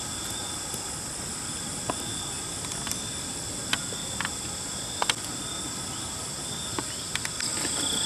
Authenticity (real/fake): real